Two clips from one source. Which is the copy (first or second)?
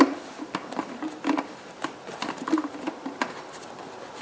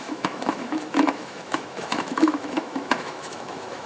second